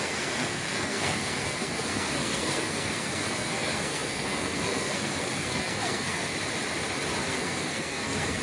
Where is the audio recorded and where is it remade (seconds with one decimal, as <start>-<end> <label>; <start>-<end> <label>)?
0.0-6.3 remade; 6.3-7.2 recorded; 7.2-8.4 remade